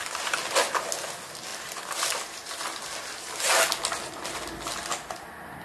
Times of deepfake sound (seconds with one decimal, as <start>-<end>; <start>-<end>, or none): none